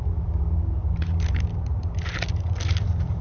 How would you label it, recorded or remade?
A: recorded